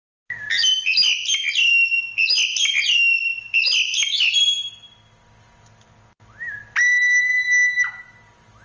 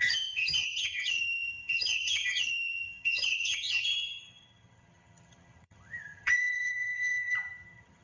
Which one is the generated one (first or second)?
second